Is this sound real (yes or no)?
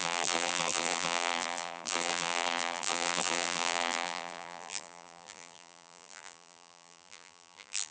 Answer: no